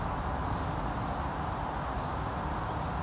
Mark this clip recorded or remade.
recorded